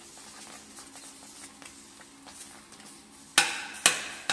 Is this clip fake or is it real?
real